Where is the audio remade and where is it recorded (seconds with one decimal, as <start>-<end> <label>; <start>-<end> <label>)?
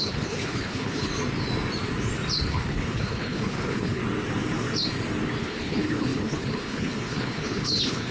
0.0-1.1 remade; 1.1-2.5 recorded; 2.5-4.0 remade; 4.0-5.4 recorded; 5.4-8.1 remade